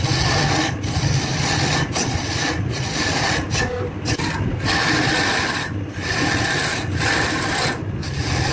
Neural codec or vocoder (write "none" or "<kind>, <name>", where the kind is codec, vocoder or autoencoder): none